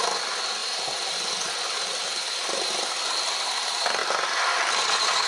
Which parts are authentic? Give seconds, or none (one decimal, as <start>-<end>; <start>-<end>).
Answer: 0.0-5.3